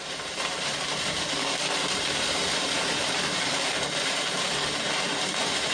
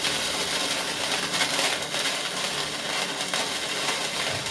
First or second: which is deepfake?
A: first